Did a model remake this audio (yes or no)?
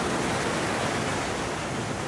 no